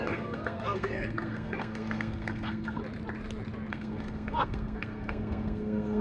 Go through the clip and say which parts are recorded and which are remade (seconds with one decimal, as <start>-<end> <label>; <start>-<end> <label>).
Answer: 0.0-2.8 remade; 2.8-3.7 recorded; 3.7-6.0 remade